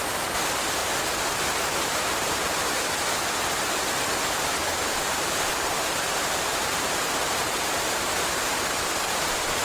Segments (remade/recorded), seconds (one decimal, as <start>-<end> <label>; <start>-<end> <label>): 0.0-0.8 recorded; 0.8-2.9 remade; 2.9-4.8 recorded; 4.8-7.0 remade; 7.0-9.6 recorded